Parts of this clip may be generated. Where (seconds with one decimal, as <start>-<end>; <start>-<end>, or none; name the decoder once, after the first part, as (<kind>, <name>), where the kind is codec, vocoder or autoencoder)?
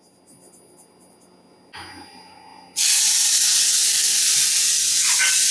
none